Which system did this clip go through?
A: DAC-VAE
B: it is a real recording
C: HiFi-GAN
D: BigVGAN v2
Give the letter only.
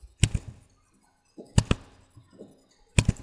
B